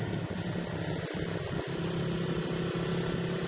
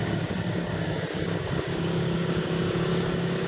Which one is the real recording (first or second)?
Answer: first